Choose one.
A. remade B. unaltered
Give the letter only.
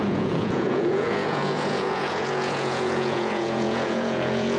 A